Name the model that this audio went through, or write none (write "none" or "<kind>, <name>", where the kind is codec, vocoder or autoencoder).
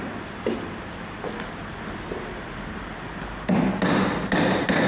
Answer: none